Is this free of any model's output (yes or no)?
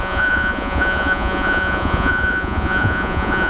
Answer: no